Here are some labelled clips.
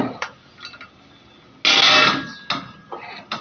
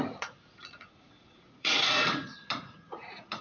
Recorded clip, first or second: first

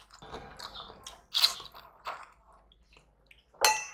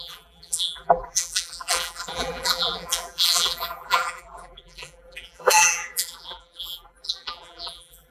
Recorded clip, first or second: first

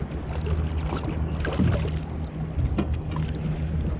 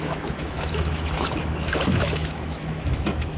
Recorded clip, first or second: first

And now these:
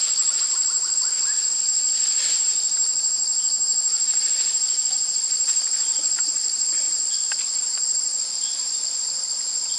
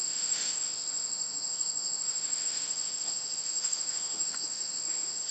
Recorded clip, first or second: first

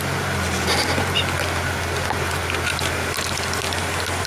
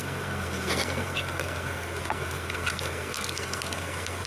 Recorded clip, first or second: first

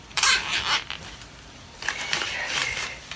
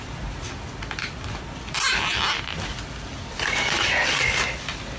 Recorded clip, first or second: second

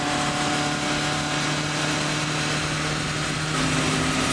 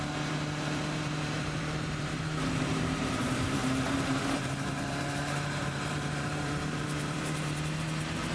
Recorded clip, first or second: first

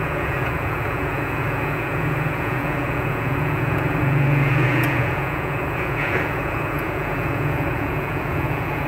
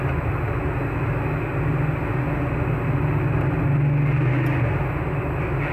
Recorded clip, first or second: second